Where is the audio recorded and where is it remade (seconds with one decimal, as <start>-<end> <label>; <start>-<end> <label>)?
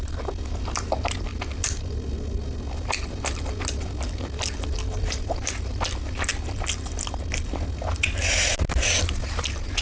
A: 0.0-9.8 recorded